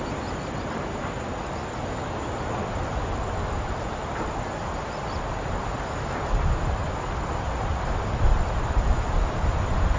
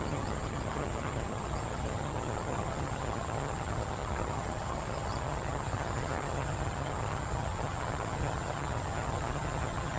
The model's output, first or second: second